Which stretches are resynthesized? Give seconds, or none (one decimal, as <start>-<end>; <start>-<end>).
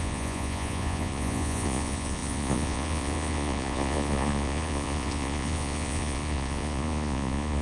0.0-7.6